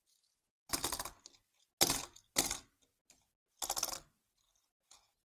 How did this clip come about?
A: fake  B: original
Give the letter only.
B